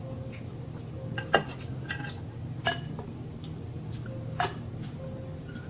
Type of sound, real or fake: real